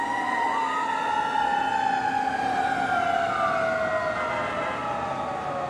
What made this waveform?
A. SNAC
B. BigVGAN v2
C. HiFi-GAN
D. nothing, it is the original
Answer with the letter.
D